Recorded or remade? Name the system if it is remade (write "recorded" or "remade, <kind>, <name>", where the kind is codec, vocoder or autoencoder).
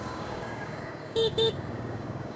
remade, codec, DAC